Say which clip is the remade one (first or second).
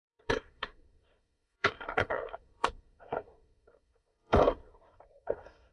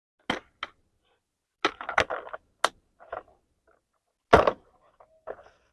first